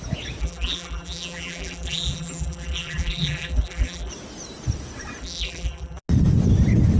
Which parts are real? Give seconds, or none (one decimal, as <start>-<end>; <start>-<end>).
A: 0.0-0.4; 4.1-5.2; 6.0-7.0